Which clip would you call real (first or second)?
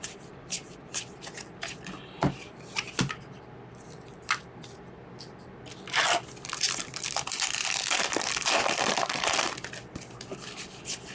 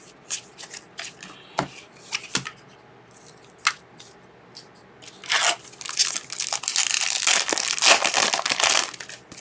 second